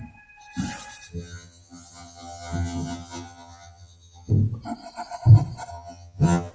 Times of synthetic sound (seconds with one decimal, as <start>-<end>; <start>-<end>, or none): 1.1-4.3; 5.7-6.5